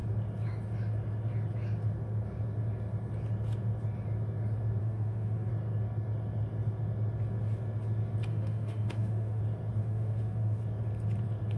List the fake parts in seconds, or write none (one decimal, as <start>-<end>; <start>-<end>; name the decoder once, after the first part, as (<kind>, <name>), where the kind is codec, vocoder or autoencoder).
4.8-5.5 (autoencoder, DAC-VAE); 8.3-9.4; 9.8-10.6